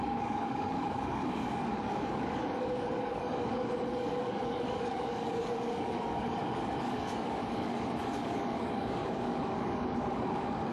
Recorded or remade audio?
remade